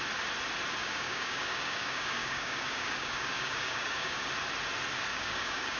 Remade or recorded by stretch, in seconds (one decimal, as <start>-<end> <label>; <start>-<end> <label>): 0.0-0.8 recorded; 0.8-4.2 remade; 4.2-5.1 recorded; 5.1-5.8 remade